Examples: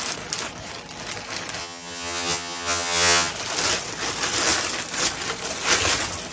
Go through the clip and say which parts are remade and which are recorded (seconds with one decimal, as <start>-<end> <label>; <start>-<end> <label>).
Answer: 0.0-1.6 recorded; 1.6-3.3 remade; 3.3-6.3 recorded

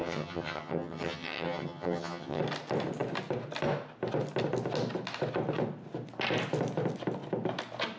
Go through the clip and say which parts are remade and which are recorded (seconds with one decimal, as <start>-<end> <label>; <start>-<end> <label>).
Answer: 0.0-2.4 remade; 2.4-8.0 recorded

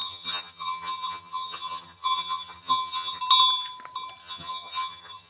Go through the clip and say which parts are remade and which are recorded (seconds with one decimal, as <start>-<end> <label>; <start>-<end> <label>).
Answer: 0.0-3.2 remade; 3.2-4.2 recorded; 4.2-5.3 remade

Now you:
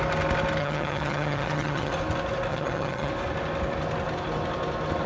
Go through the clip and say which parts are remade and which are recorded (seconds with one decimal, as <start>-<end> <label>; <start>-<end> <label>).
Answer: 0.0-0.6 recorded; 0.6-1.9 remade; 1.9-2.5 recorded; 2.5-3.1 remade; 3.1-5.1 recorded

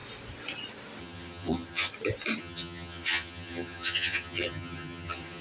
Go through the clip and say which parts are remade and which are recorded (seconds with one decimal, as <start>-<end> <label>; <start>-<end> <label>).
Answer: 0.0-1.0 recorded; 1.0-1.9 remade; 1.9-2.4 recorded; 2.4-5.4 remade